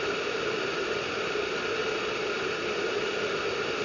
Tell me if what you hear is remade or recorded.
recorded